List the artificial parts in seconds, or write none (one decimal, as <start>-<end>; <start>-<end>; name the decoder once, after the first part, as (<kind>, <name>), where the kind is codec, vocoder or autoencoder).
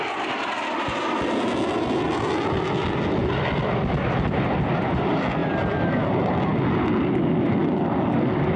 5.4-5.9 (vocoder, BigVGAN v2)